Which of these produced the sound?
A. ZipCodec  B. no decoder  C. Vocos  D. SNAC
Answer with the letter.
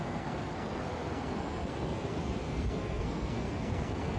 D